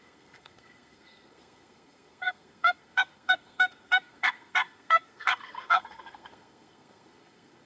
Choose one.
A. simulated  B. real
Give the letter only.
A